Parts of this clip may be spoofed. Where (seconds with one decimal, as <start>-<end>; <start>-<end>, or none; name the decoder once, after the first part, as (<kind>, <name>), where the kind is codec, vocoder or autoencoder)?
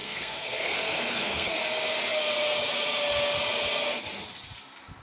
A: 0.0-1.5 (codec, SNAC)